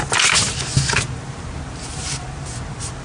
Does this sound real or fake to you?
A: real